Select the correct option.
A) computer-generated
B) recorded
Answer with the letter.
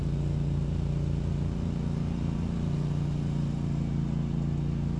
B